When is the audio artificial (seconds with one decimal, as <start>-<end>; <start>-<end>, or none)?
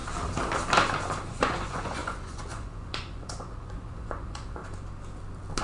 1.3-4.6